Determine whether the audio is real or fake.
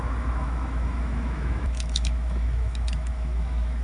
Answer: fake